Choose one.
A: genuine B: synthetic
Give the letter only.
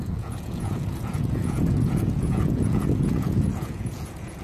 B